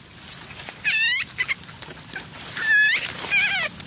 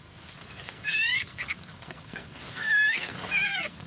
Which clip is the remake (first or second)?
second